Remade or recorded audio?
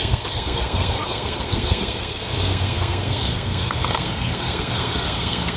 remade